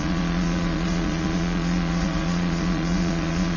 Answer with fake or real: fake